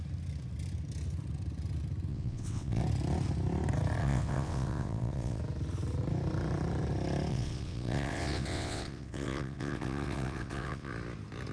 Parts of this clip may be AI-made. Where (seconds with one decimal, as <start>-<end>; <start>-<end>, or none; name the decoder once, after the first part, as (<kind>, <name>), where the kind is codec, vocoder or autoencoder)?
2.1-2.8 (vocoder, WaveNeXt); 4.0-5.4; 7.3-10.9